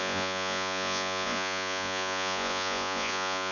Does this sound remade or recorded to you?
remade